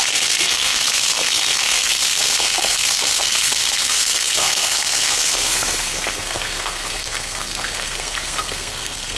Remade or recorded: remade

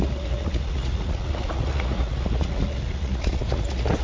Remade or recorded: remade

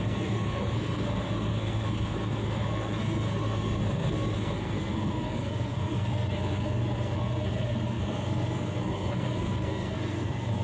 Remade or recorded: remade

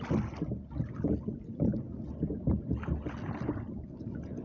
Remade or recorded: recorded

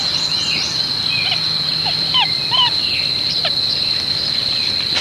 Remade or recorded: recorded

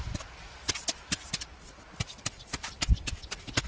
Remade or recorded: recorded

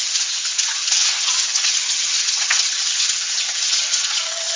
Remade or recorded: remade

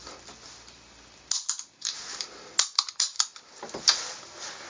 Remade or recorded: recorded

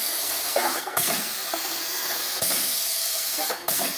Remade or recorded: remade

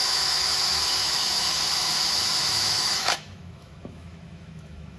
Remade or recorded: remade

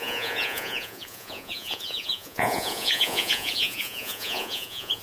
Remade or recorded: remade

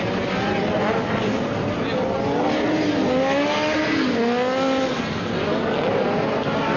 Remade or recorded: recorded